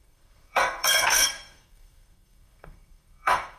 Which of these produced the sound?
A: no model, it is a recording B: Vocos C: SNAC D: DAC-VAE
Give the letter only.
C